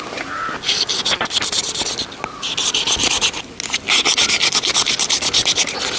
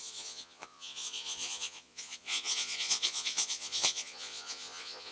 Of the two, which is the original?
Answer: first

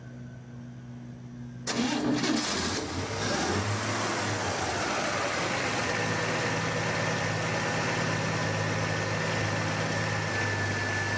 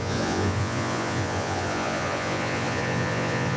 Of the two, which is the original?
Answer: first